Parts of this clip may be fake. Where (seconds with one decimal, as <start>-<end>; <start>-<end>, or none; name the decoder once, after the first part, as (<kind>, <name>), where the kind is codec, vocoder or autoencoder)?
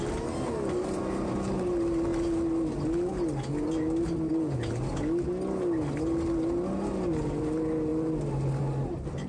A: 7.9-8.6 (vocoder, BigVGAN v2)